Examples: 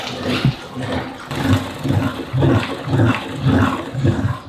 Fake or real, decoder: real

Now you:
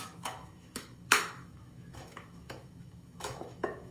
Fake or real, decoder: fake, autoencoder, DAC-VAE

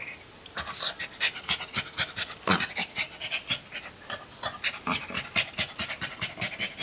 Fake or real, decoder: real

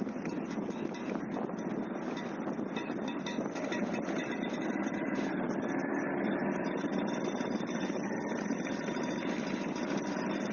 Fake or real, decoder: real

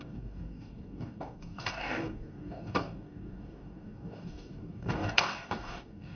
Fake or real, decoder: fake, codec, DAC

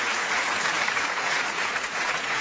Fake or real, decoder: fake, vocoder, Vocos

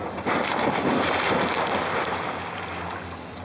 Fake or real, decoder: real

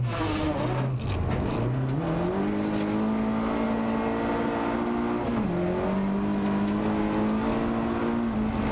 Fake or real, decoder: real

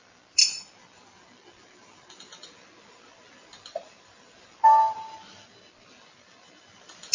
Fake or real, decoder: fake, vocoder, BigVGAN v2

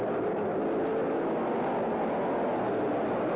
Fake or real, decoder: real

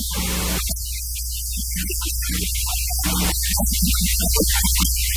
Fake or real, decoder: real